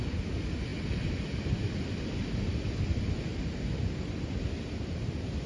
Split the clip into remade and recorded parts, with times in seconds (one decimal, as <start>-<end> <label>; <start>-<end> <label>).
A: 0.0-5.5 recorded